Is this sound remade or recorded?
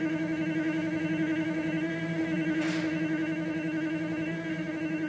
recorded